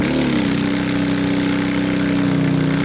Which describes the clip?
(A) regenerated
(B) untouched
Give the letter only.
B